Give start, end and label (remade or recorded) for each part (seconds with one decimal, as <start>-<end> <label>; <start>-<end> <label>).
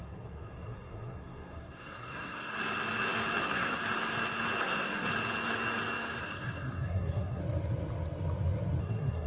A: 0.0-2.5 remade; 2.5-3.4 recorded; 3.4-3.8 remade; 3.8-4.6 recorded; 4.6-5.1 remade; 5.1-6.2 recorded; 6.2-7.4 remade; 7.4-8.8 recorded; 8.8-9.3 remade